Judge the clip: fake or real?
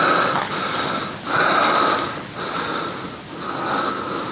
real